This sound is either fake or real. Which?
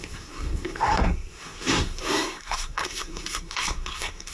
fake